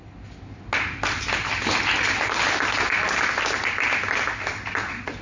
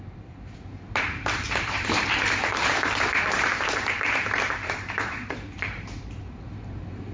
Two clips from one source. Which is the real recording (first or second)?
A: first